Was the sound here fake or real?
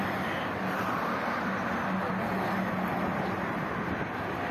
real